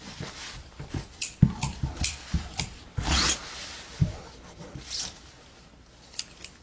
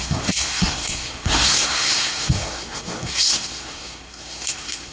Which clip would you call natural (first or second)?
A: first